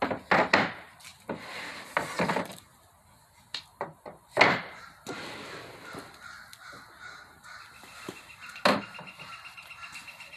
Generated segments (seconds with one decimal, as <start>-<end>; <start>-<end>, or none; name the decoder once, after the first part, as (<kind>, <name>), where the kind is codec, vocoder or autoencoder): none